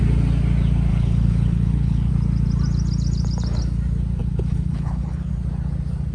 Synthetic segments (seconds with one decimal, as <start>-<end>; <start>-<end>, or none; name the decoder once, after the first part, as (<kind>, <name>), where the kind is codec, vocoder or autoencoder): 0.9-2.1 (codec, HILCodec); 4.2-5.3